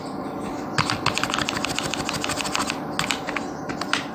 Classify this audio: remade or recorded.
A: recorded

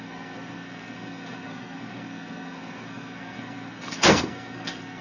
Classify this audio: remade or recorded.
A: remade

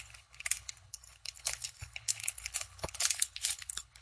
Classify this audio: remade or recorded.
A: remade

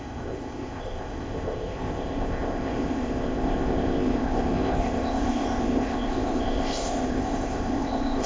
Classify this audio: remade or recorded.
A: remade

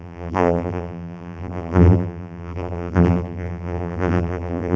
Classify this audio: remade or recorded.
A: remade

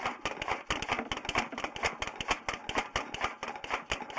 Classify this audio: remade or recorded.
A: recorded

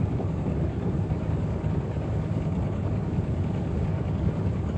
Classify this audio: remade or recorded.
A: remade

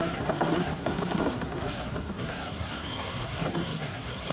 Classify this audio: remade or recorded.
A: remade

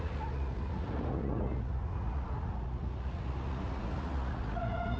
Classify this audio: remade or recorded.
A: remade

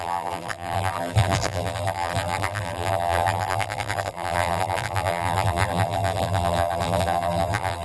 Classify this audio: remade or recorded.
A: remade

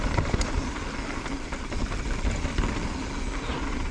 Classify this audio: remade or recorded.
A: recorded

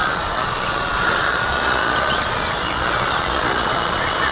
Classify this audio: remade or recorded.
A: remade